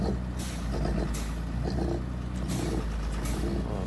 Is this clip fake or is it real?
real